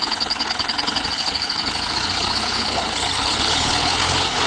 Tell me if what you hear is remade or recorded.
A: remade